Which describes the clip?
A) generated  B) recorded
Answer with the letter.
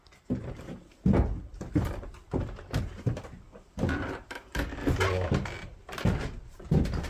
B